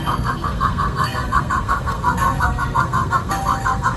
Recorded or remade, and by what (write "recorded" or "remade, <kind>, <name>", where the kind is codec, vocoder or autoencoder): remade, codec, SNAC